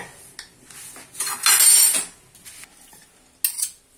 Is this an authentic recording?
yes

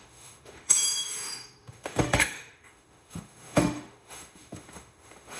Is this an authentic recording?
no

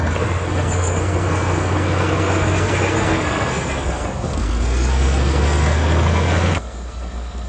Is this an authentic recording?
no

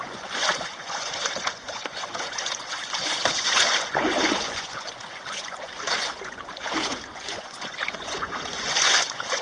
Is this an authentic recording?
no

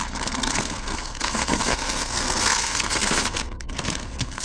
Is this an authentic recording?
no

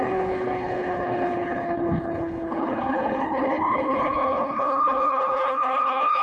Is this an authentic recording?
no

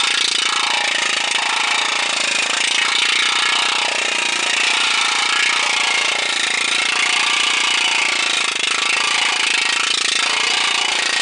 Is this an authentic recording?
yes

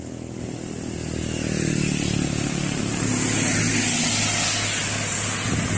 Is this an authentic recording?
yes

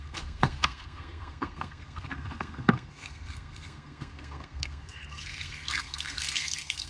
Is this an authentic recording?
no